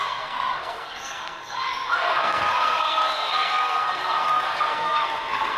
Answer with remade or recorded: remade